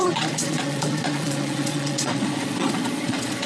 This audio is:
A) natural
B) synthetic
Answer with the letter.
B